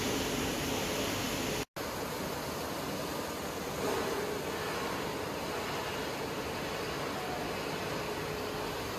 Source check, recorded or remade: recorded